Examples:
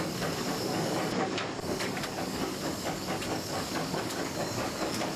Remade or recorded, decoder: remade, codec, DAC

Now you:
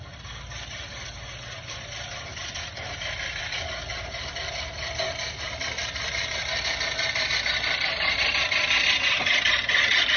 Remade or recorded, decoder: recorded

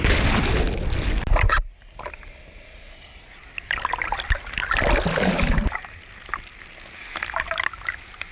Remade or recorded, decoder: recorded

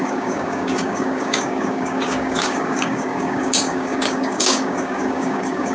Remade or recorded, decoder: remade, codec, DAC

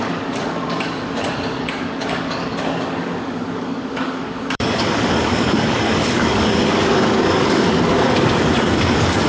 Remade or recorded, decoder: remade, codec, DAC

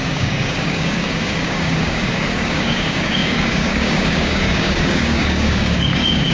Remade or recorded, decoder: remade, codec, DAC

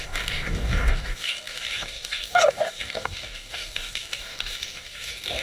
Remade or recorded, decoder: remade, codec, DAC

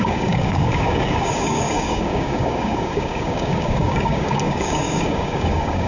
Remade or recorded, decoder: remade, codec, DAC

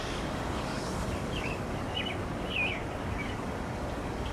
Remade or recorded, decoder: remade, codec, DAC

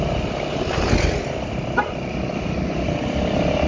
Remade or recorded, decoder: recorded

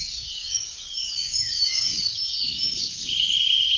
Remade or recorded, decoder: remade, codec, DAC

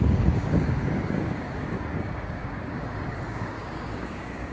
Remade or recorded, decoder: remade, codec, DAC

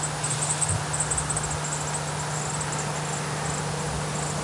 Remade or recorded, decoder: recorded